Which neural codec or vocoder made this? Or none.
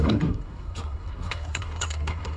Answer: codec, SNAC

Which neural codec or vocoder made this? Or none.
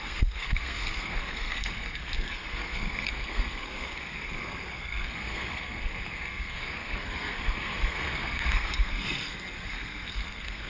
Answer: codec, SNAC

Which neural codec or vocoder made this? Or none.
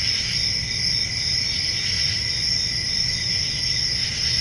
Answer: none